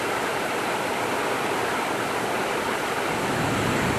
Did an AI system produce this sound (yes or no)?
no